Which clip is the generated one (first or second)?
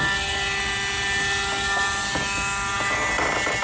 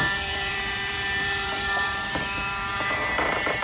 second